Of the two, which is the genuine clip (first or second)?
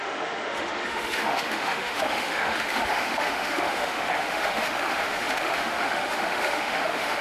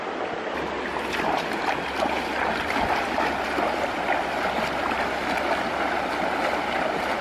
second